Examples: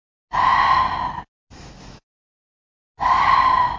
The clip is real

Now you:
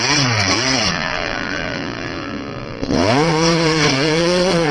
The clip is fake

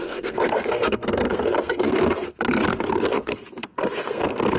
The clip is fake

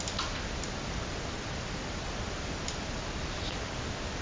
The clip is real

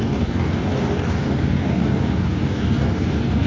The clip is fake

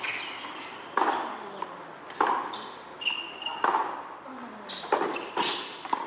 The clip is real